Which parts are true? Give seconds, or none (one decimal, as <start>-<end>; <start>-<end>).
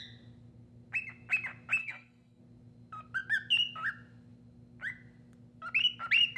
0.0-1.8; 2.4-6.4